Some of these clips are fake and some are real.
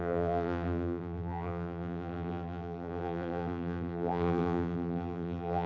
fake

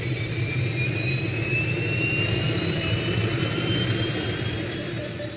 fake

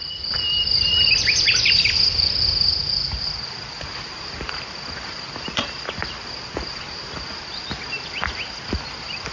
fake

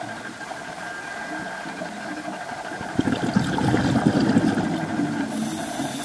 real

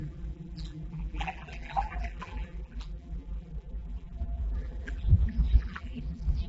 fake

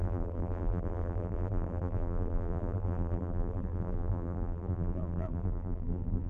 fake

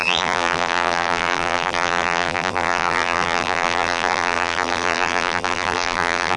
fake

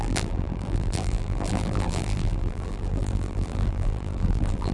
fake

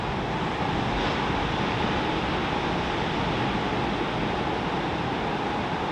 real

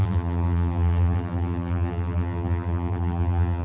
fake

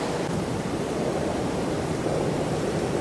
real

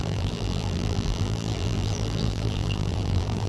fake